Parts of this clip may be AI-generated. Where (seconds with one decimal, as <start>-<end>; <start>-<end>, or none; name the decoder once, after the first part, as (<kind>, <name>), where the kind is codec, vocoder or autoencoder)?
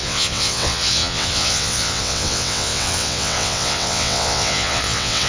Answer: 0.0-5.3 (vocoder, WaveNeXt)